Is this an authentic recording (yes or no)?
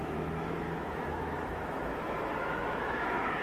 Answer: no